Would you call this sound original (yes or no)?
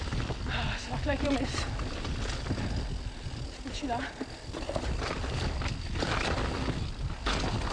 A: yes